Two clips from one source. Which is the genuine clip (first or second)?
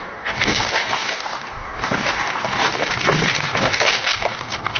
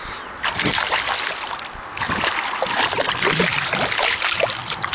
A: second